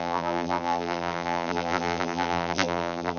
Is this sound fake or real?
fake